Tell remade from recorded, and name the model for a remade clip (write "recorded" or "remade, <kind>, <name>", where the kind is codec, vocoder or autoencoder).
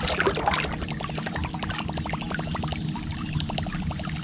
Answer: recorded